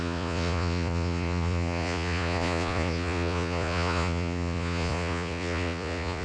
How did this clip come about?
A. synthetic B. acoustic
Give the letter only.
A